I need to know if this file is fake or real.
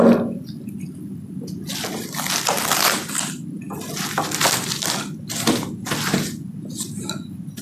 real